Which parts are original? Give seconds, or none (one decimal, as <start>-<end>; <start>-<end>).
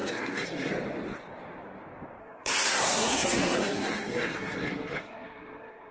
0.7-2.2